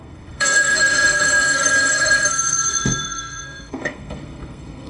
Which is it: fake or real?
fake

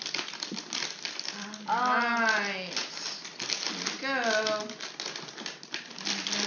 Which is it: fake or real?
real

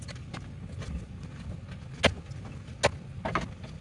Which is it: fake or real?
real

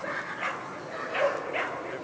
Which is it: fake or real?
real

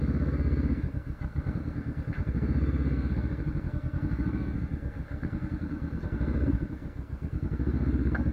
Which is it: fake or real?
fake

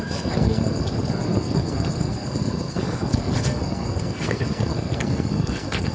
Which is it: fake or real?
fake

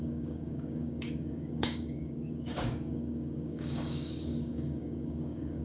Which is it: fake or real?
fake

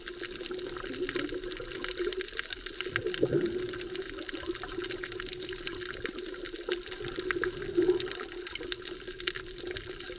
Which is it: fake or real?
real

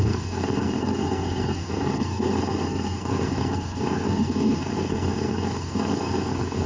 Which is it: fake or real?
fake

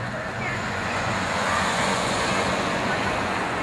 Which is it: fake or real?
fake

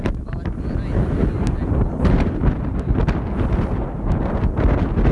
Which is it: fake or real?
real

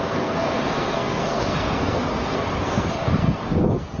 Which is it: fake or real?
fake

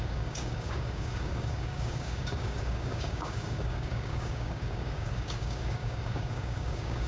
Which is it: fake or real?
fake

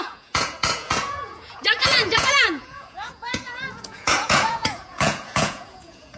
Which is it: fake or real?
fake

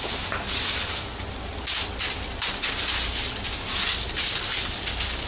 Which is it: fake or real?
real